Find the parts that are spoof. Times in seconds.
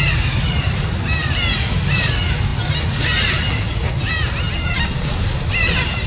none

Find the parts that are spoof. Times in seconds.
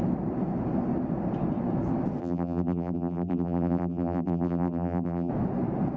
2.2-5.3 (vocoder, BigVGAN v2)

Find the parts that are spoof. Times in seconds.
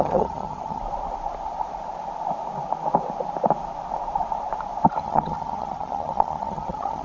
0.0-0.8 (vocoder, HiFi-GAN); 5.0-7.0